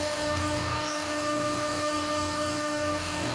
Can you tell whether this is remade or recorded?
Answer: remade